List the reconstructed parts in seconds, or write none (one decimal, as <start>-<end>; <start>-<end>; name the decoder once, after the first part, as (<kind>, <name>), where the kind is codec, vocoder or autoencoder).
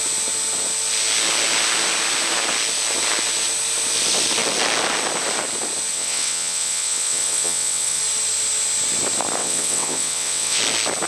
5.9-8.0 (vocoder, WaveNeXt); 9.4-10.6